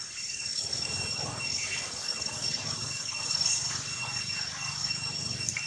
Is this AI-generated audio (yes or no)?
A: yes